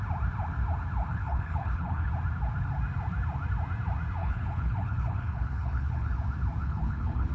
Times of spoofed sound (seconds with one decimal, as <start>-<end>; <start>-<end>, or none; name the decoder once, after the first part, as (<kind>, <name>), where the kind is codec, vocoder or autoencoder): 1.1-2.1 (codec, HILCodec); 4.2-6.1; 6.6-7.3